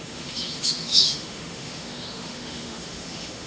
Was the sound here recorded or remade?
remade